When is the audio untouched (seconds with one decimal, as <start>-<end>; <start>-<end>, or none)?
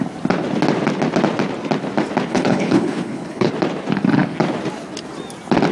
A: 0.0-2.3; 3.5-5.7